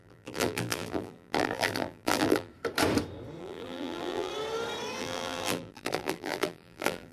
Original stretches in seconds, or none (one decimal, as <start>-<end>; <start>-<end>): 2.5-3.4; 4.3-5.0